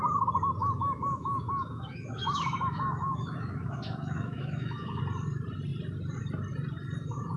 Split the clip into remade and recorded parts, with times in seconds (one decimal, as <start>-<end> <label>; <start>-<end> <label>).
0.0-0.6 recorded; 0.6-5.0 remade; 5.0-7.4 recorded